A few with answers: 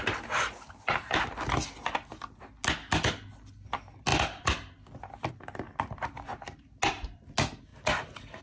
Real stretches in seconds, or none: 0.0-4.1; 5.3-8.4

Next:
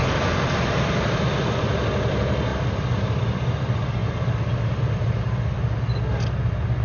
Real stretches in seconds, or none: 1.9-2.5; 3.6-4.0; 4.8-6.8

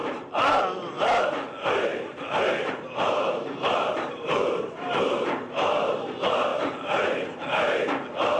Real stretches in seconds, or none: 0.6-1.9; 5.0-6.5; 7.3-8.4